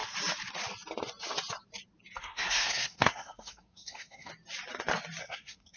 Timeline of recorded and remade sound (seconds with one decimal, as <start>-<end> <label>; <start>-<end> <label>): 0.0-2.2 recorded; 2.2-4.3 remade; 4.3-5.2 recorded; 5.2-5.8 remade